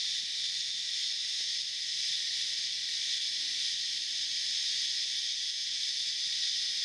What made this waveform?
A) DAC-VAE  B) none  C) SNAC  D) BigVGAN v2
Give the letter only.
B